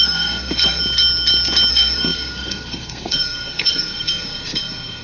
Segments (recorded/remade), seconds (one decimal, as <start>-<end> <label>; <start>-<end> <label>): 0.0-0.8 remade; 0.8-1.7 recorded; 1.7-5.0 remade